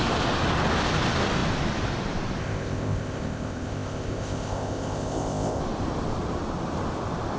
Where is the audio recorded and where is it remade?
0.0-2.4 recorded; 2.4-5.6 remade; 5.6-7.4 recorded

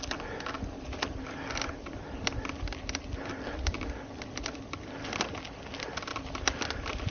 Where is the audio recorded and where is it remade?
0.0-7.1 recorded

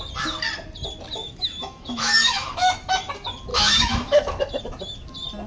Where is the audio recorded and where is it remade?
0.0-1.2 recorded; 1.2-3.1 remade; 3.1-3.5 recorded; 3.5-4.6 remade; 4.6-5.5 recorded

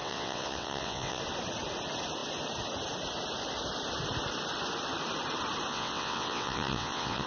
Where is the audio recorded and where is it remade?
0.0-1.2 remade; 1.2-5.7 recorded; 5.7-7.3 remade

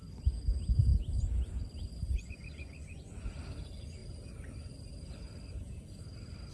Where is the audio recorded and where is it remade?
0.0-2.1 recorded; 2.1-3.4 remade; 3.4-6.5 recorded

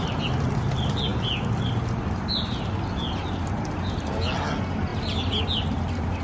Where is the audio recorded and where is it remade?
0.0-6.2 recorded

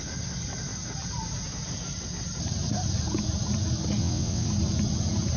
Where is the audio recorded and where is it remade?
0.0-4.0 recorded; 4.0-4.5 remade; 4.5-5.4 recorded

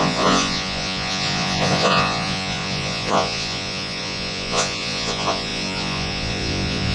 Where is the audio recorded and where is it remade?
0.0-6.9 remade